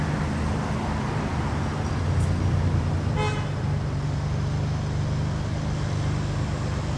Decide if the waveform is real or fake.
real